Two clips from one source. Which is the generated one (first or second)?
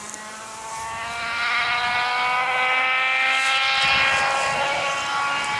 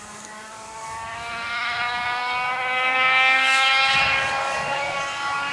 second